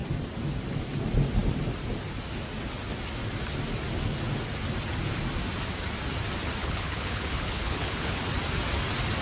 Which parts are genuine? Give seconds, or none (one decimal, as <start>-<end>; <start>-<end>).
0.0-6.6; 8.2-9.2